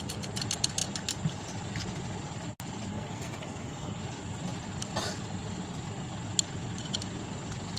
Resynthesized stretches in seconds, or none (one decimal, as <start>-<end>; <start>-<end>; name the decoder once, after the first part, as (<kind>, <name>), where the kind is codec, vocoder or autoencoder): 2.9-4.0 (codec, SNAC)